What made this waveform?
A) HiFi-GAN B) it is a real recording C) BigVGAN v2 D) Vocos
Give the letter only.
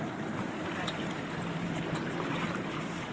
C